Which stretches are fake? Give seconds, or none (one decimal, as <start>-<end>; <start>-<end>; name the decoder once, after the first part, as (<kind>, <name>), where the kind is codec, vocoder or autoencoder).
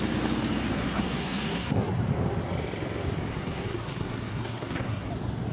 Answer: 0.7-2.0 (codec, SNAC); 3.3-5.1